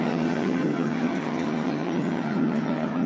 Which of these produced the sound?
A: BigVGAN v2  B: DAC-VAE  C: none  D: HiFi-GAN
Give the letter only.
D